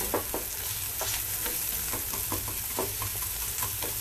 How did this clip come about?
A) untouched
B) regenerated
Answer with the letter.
A